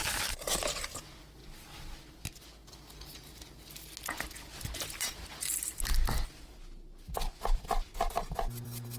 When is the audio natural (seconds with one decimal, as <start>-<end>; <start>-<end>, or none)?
0.0-9.0